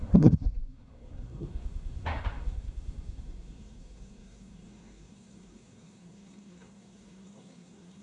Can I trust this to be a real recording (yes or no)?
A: no